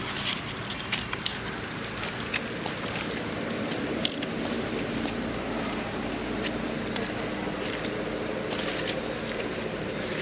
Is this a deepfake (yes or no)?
no